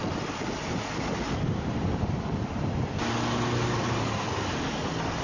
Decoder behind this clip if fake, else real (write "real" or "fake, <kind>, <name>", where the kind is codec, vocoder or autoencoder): real